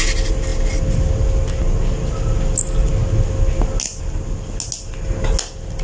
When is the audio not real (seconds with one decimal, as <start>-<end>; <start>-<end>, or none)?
none